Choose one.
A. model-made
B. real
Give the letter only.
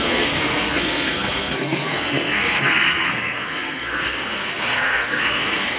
A